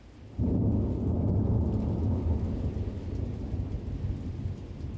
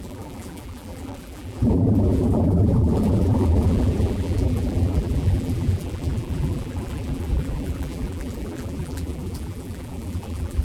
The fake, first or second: second